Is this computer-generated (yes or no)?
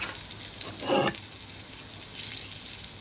no